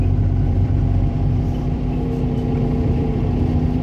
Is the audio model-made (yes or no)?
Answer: yes